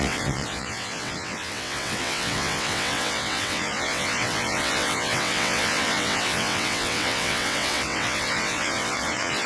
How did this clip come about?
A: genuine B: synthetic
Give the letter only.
B